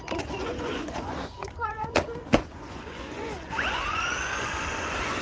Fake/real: fake